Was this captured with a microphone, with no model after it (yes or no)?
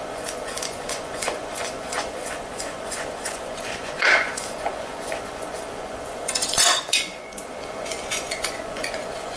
no